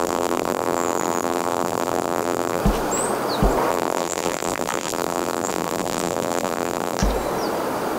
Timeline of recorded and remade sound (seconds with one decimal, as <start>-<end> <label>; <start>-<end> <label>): 0.0-2.6 remade; 2.6-3.7 recorded; 3.7-7.0 remade; 7.0-8.0 recorded